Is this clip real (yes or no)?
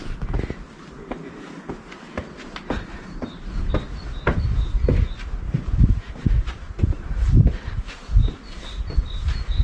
yes